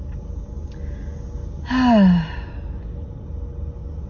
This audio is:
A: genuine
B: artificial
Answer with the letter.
A